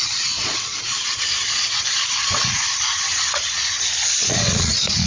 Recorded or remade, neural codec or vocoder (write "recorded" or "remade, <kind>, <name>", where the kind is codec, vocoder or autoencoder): remade, vocoder, Vocos